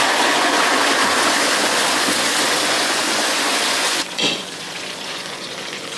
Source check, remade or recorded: remade